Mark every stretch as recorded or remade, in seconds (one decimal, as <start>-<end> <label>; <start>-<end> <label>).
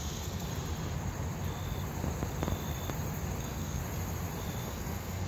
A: 0.0-0.5 remade; 0.5-3.4 recorded; 3.4-3.8 remade; 3.8-4.6 recorded; 4.6-5.3 remade